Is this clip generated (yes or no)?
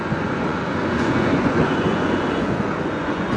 yes